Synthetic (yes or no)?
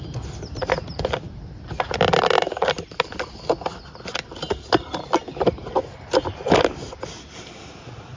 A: no